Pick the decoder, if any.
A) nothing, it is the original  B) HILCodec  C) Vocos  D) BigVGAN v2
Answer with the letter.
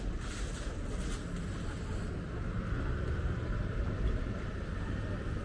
D